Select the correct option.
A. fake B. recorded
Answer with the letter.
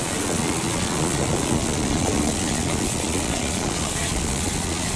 A